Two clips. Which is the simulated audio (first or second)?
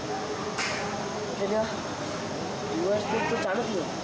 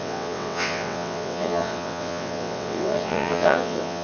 second